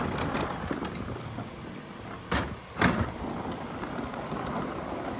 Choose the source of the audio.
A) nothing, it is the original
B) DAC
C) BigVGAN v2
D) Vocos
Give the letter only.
A